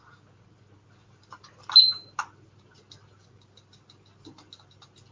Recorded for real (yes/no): yes